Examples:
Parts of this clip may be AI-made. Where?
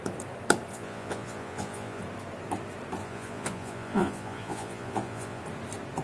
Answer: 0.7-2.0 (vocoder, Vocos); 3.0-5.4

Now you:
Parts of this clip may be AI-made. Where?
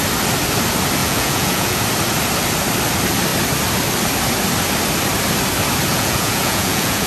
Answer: 1.0-1.8 (vocoder, Vocos); 5.9-7.1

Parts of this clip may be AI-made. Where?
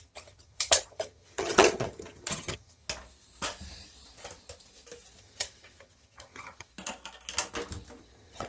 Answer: 0.0-2.8 (vocoder, HiFi-GAN); 5.2-6.7; 8.0-8.5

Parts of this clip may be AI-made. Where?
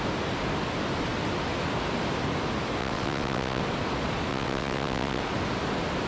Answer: 2.8-3.6 (vocoder, WaveNeXt); 4.3-5.2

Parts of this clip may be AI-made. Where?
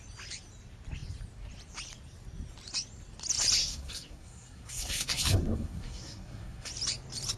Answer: 3.6-6.7 (codec, SNAC)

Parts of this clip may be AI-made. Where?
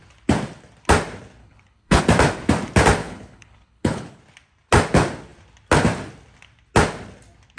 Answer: 1.4-2.0 (codec, HILCodec); 3.0-4.2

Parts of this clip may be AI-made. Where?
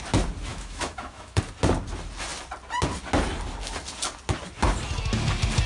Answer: 0.5-1.4 (autoencoder, DAC-VAE)